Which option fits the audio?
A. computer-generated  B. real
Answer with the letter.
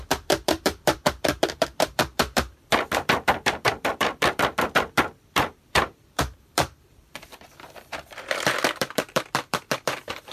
A